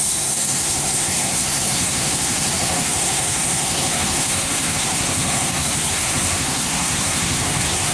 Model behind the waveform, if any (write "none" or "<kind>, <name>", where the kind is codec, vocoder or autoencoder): codec, SNAC